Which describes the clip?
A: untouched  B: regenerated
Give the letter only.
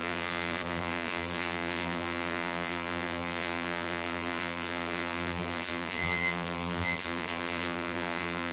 B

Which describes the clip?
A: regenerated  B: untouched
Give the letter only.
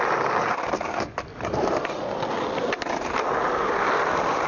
B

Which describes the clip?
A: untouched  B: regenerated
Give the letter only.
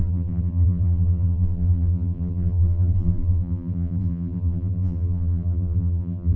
B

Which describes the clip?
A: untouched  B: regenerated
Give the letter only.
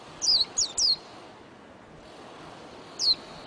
A